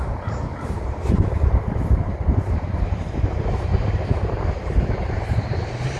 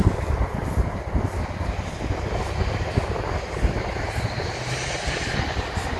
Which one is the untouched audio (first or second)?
second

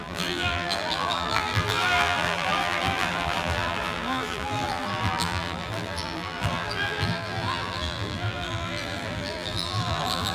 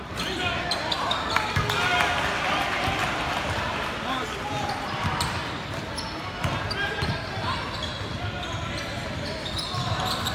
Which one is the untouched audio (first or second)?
second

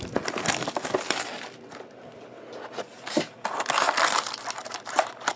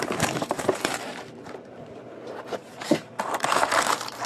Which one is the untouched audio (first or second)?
first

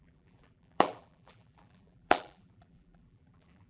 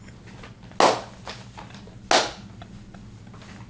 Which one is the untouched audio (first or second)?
second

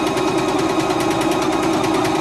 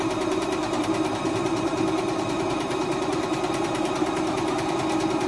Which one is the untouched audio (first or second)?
first